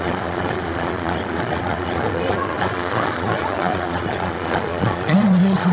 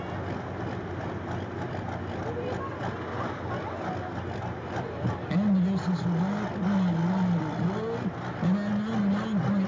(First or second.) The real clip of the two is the second